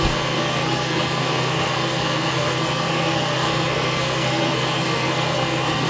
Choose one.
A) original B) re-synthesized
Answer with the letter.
B